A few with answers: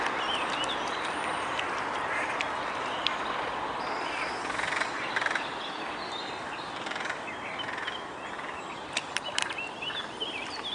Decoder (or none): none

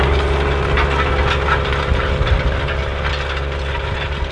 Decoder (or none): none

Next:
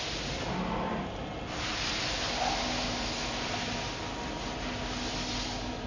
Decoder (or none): none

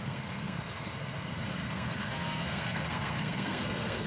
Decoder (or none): codec, SNAC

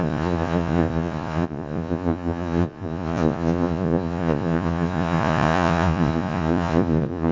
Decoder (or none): vocoder, Vocos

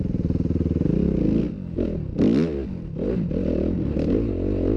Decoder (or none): none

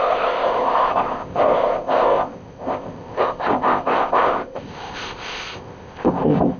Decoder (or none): codec, ZipCodec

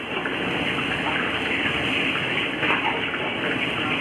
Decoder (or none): none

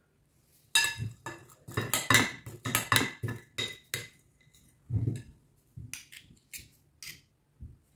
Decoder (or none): none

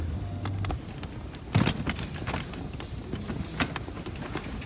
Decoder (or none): none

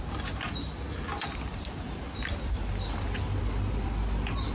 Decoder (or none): none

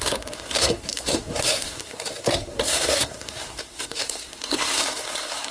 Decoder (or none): codec, SNAC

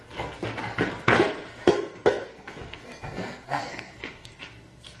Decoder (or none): codec, SNAC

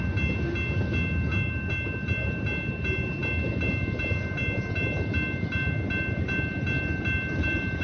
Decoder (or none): none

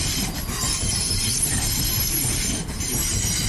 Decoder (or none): none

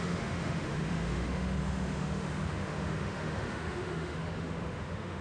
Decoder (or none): autoencoder, DAC-VAE